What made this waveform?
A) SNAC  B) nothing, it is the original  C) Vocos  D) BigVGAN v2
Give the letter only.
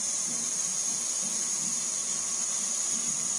B